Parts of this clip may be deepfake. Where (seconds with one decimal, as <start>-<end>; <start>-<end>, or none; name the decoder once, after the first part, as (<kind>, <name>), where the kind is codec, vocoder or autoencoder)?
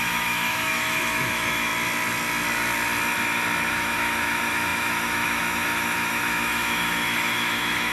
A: 0.0-1.7 (autoencoder, DAC-VAE); 3.7-7.9